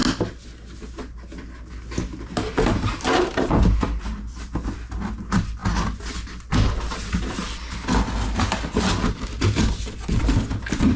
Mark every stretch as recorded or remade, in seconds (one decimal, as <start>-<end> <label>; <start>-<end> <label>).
0.0-11.0 recorded